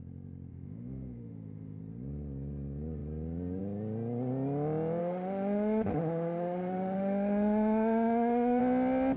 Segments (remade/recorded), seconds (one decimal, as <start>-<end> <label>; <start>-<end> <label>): 0.0-0.5 recorded; 0.5-1.8 remade; 1.8-5.0 recorded; 5.0-8.6 remade; 8.6-9.2 recorded